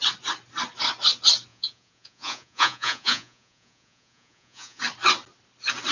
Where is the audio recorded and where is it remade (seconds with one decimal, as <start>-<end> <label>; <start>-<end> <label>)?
0.0-1.5 recorded; 1.5-4.8 remade; 4.8-5.9 recorded